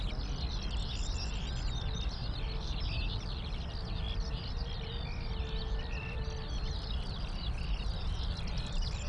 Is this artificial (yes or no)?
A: no